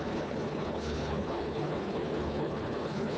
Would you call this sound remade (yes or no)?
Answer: yes